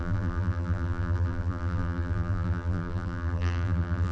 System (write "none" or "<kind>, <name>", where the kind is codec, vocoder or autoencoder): vocoder, BigVGAN v2